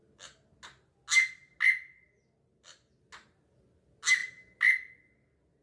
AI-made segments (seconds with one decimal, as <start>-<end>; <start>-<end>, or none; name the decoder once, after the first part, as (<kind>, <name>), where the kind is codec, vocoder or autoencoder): none